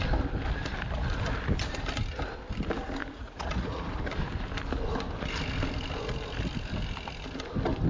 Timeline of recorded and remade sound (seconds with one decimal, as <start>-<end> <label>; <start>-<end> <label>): 0.0-3.0 recorded; 3.0-4.0 remade; 4.0-7.9 recorded